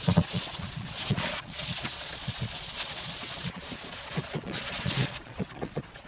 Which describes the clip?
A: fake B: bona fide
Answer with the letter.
A